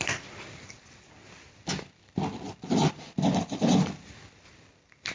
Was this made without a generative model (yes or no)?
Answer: no